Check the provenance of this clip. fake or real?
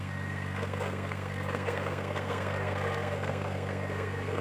fake